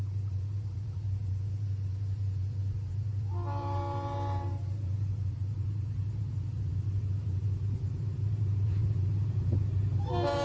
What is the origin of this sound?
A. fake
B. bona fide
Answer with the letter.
A